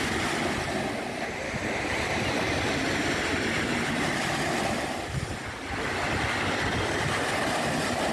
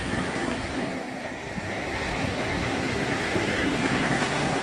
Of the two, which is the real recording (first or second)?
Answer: first